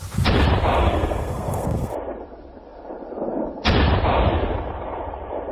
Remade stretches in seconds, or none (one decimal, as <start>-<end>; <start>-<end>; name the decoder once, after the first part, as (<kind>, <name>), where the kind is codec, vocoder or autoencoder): 0.8-1.9 (codec, SNAC)